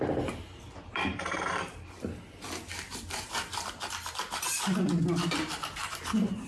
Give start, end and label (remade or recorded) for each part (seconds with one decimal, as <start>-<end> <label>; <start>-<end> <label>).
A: 0.0-1.1 recorded; 1.1-4.9 remade; 4.9-6.5 recorded